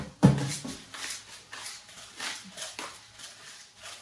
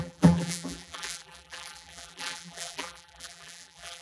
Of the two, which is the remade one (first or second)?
second